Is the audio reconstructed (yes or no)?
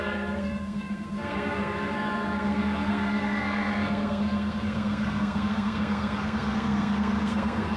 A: yes